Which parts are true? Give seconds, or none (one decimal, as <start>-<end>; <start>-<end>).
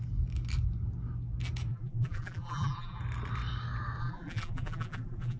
0.0-1.7; 3.0-4.0